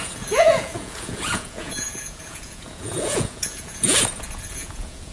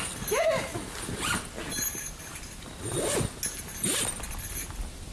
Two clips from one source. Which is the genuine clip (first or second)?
second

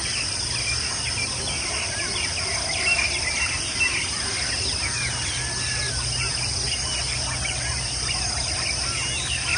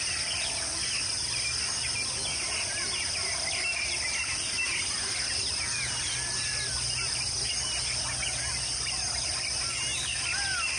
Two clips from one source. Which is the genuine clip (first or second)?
second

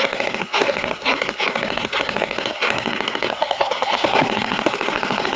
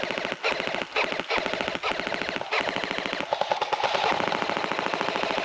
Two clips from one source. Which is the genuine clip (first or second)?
second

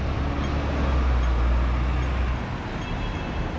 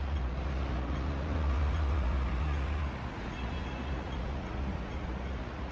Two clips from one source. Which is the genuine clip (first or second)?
first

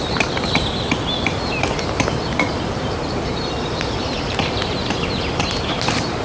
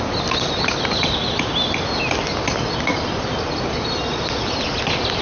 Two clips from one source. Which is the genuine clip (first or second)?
second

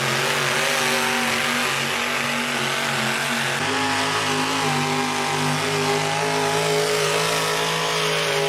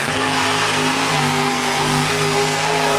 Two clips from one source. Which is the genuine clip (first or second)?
first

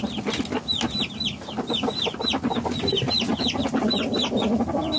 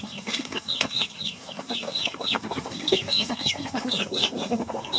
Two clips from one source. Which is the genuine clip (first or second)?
first